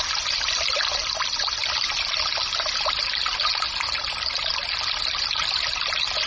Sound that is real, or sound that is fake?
real